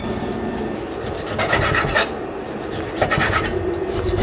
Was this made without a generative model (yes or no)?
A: yes